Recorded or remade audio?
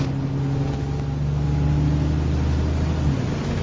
recorded